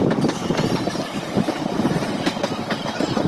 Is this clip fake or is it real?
real